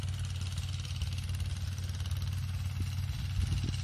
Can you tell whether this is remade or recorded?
recorded